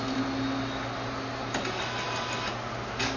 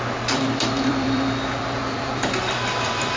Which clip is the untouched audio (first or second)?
first